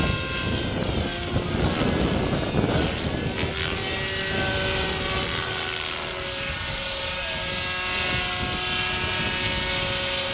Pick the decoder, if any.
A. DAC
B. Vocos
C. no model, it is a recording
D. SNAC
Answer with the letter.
C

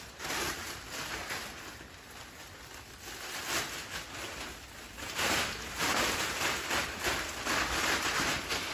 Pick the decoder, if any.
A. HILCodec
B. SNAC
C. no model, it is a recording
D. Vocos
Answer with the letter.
C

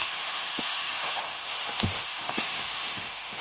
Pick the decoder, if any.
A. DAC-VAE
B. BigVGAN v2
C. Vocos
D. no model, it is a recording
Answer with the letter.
A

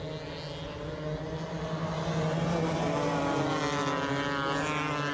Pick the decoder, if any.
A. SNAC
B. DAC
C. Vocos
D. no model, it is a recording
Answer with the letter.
D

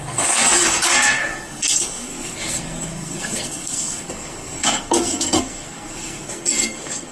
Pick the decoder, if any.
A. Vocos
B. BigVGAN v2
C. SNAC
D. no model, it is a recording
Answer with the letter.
C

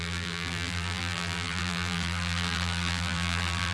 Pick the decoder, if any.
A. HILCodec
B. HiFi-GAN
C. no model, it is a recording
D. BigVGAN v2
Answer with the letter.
D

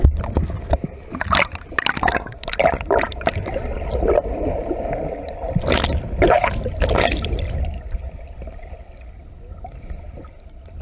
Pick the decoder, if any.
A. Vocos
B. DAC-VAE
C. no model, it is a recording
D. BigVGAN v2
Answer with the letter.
C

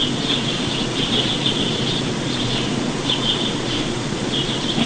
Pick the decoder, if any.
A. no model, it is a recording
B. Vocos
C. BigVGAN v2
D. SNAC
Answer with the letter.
B